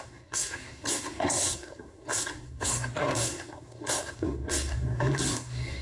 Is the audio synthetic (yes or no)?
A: yes